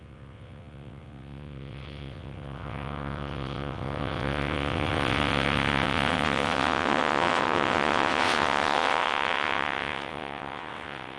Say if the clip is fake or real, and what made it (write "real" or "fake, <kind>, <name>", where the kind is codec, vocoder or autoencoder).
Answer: fake, vocoder, WaveNeXt